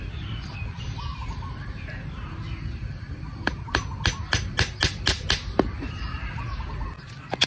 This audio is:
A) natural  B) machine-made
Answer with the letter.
A